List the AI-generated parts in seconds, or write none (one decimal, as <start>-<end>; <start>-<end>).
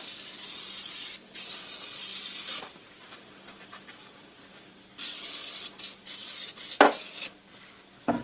none